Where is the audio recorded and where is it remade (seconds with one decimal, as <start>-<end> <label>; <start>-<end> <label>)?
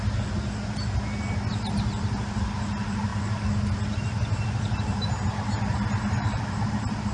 0.0-7.1 recorded